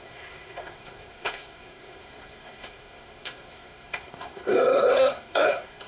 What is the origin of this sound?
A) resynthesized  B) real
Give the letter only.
A